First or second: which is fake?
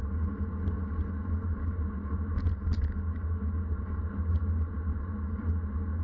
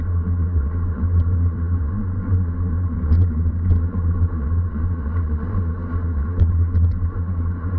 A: second